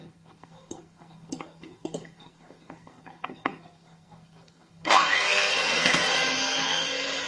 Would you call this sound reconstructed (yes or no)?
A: yes